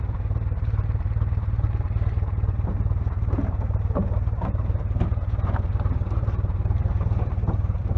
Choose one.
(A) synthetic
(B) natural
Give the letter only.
A